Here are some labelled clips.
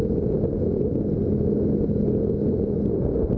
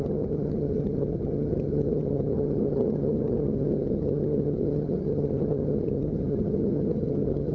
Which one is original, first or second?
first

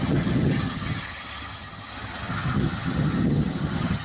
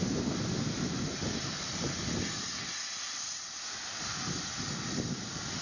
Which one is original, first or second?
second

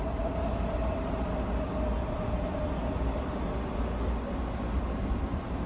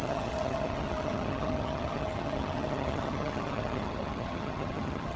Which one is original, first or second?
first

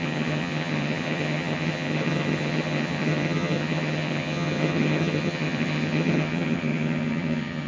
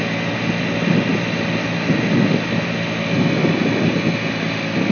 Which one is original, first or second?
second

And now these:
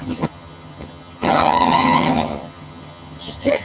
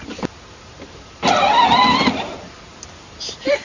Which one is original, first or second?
second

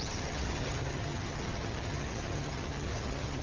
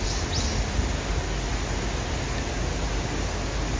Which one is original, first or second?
second